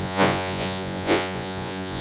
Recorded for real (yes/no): no